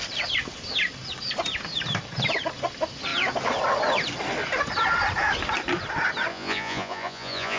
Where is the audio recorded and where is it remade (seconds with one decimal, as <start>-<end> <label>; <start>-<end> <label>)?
0.0-6.3 recorded; 6.3-7.6 remade